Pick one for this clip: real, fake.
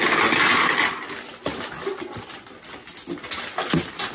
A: real